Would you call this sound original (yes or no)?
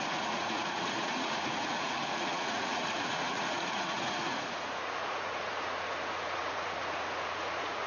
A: no